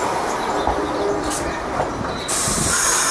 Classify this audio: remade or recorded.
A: recorded